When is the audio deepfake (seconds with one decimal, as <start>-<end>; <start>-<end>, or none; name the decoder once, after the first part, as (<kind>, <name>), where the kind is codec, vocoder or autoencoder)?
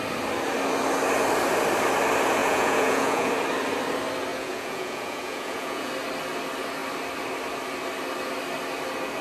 2.4-3.3 (vocoder, Vocos); 4.3-5.9